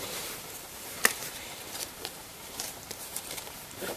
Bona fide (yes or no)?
no